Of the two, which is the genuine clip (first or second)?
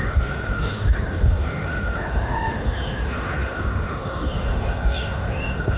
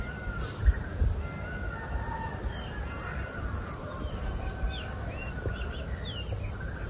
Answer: second